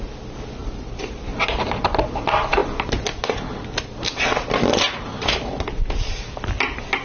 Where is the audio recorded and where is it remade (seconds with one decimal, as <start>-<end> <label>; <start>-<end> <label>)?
0.0-0.6 recorded; 0.6-1.2 remade; 1.2-7.0 recorded